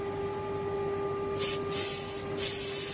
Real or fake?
real